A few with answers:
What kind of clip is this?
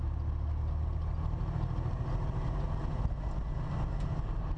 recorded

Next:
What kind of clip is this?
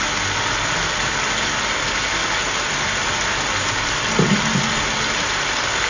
recorded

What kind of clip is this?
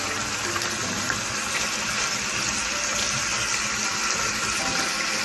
recorded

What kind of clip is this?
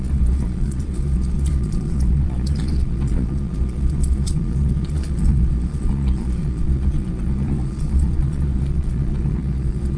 remade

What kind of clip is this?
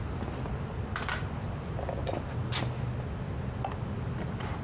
recorded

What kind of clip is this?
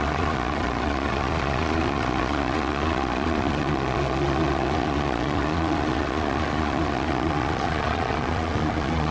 remade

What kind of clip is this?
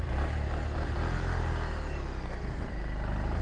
recorded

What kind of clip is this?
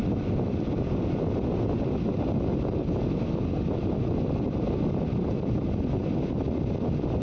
recorded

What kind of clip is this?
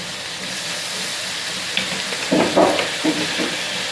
recorded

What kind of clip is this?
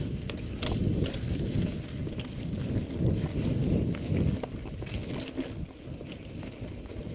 recorded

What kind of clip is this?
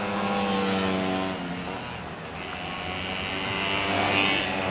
recorded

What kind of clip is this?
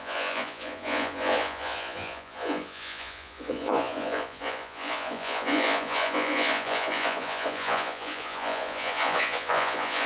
remade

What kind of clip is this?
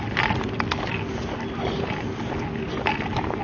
recorded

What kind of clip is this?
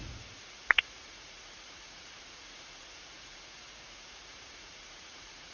remade